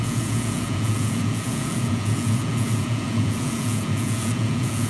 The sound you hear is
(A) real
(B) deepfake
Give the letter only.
B